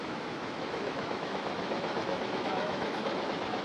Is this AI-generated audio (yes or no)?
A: yes